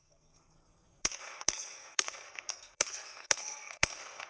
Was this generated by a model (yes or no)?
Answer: yes